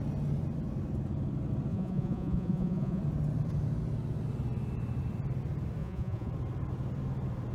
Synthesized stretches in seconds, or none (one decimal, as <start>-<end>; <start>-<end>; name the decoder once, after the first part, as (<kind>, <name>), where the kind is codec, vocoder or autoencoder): 1.7-3.0 (vocoder, Vocos); 5.8-6.3